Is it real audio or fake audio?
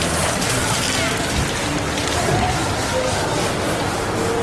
real